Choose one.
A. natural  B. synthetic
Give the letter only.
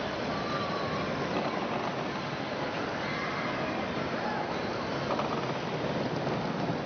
A